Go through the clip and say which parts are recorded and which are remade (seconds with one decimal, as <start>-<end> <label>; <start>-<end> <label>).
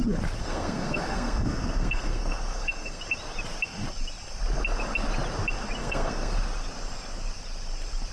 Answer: 0.0-0.4 recorded; 0.4-3.0 remade; 3.0-5.8 recorded; 5.8-6.3 remade; 6.3-8.1 recorded